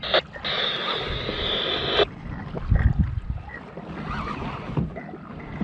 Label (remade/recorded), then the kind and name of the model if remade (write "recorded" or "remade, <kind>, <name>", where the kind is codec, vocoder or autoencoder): recorded